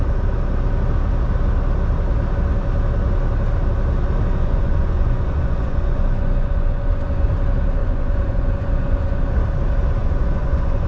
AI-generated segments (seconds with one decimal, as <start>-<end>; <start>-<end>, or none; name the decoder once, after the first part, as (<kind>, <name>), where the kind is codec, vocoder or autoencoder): 4.3-7.3 (vocoder, Vocos); 7.8-9.2; 10.0-10.9